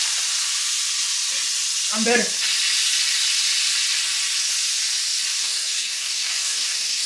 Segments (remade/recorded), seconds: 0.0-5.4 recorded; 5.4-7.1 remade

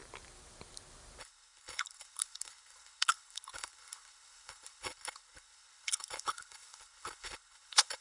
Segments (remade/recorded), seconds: 0.0-1.2 recorded; 1.2-8.0 remade